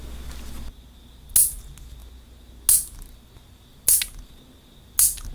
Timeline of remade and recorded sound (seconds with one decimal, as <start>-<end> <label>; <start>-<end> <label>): 0.0-5.3 recorded